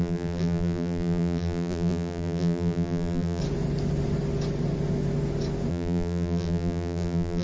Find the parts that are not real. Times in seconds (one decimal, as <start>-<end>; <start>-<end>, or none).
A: 0.0-3.4; 5.7-7.4